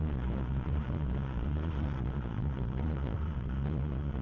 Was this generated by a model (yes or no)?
yes